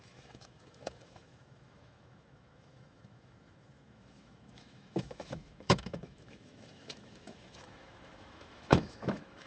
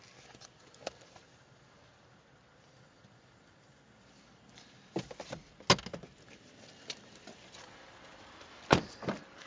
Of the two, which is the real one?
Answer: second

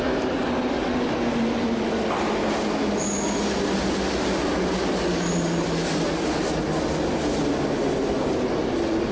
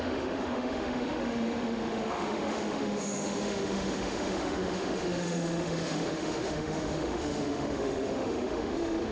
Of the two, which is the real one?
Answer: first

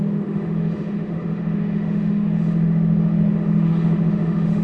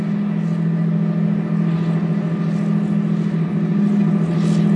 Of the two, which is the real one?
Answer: second